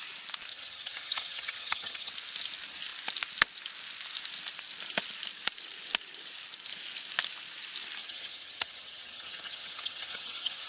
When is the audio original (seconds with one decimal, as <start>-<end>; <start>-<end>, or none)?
0.0-0.5; 2.1-8.0